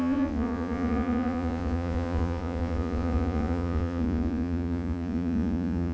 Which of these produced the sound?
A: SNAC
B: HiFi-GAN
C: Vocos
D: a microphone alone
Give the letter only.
C